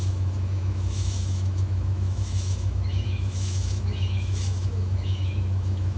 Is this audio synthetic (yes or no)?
yes